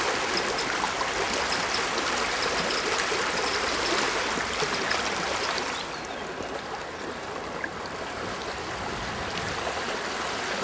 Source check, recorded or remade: recorded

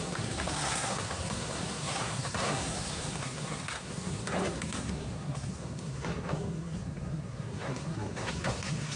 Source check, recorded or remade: remade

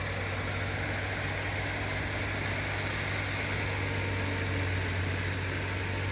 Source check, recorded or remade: recorded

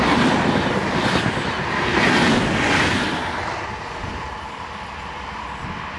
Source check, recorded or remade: recorded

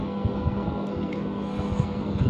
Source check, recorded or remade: remade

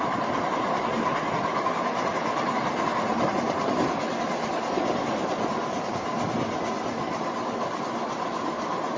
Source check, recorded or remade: recorded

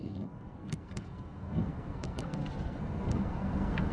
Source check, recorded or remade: remade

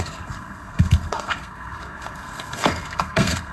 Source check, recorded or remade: remade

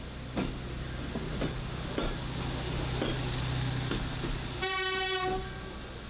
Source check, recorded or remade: recorded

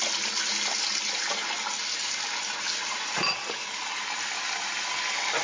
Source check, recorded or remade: recorded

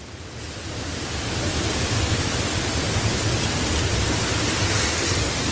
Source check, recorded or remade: recorded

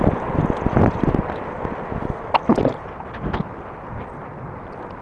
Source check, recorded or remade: recorded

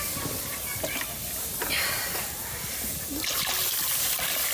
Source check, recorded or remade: recorded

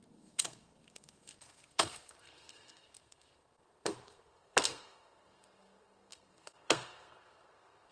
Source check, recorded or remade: remade